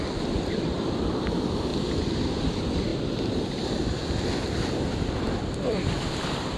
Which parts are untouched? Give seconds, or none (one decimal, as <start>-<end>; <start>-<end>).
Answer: 1.7-2.4; 2.9-4.7